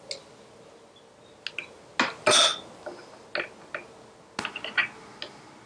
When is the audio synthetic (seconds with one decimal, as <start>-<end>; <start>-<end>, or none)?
none